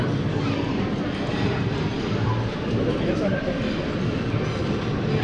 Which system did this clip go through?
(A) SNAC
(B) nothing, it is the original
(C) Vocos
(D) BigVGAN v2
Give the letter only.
B